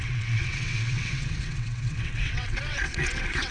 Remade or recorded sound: remade